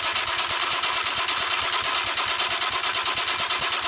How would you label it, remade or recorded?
recorded